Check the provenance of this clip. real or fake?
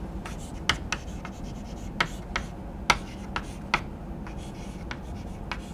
real